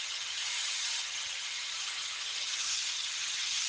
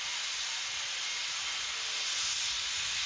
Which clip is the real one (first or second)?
second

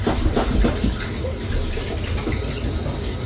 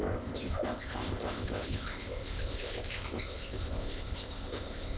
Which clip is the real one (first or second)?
first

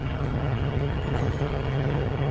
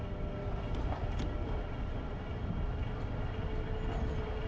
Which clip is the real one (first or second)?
second